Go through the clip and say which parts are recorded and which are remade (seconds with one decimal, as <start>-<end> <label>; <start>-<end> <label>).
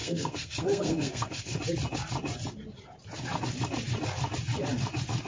0.0-1.6 remade; 1.6-5.3 recorded